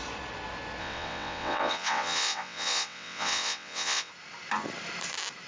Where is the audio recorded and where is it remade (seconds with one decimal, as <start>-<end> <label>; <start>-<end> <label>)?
0.0-0.8 recorded; 0.8-4.1 remade; 4.1-5.5 recorded